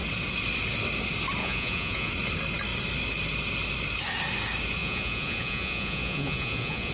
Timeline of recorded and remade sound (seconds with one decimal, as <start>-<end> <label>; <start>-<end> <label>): 0.0-1.4 recorded; 1.4-2.1 remade; 2.1-4.8 recorded; 4.8-6.9 remade